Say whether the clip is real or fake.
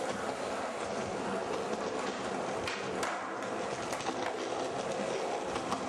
real